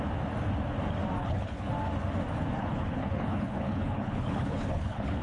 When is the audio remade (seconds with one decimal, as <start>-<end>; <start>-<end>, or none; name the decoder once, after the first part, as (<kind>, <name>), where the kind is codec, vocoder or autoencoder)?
1.2-1.7 (codec, HILCodec); 2.6-5.2